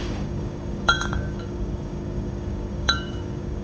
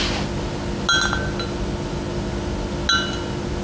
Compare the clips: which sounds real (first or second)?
second